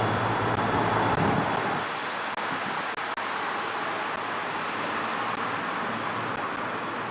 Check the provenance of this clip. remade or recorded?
recorded